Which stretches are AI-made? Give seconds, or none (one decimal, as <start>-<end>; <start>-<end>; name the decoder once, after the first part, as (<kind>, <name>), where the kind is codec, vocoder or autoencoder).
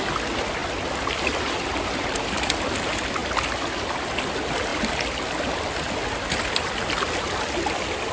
none